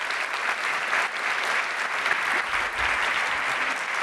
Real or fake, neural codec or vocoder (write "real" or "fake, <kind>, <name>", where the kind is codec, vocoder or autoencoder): real